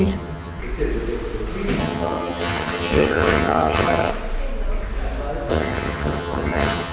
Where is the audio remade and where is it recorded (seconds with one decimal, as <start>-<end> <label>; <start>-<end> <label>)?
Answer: 0.0-0.6 remade; 0.6-1.8 recorded; 1.8-4.1 remade; 4.1-5.5 recorded; 5.5-6.9 remade